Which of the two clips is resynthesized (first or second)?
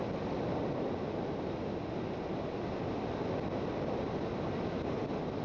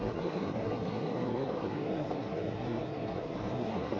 second